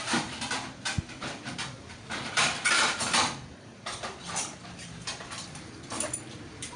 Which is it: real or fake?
fake